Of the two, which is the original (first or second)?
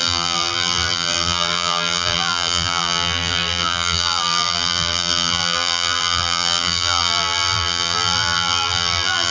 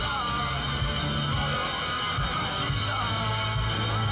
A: second